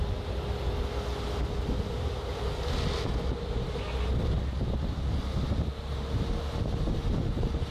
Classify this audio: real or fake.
real